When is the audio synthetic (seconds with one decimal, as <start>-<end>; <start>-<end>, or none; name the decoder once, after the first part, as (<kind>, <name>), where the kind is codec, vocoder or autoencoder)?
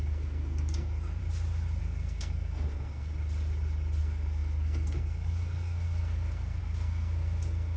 0.0-1.2 (codec, SNAC); 1.8-3.1; 4.0-7.8